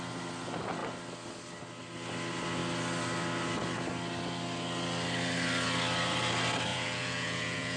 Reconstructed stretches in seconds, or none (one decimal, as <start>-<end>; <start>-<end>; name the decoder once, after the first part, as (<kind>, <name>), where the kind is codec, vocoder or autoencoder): 6.7-7.8 (vocoder, Vocos)

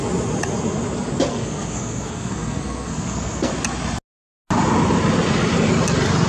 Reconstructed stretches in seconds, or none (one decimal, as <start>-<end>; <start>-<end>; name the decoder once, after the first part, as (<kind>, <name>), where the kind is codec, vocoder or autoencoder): 1.3-3.5 (codec, SNAC)

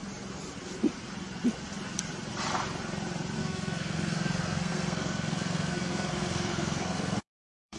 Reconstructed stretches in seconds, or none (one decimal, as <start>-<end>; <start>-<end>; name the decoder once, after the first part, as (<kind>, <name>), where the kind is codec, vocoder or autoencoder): 3.4-7.8 (codec, SNAC)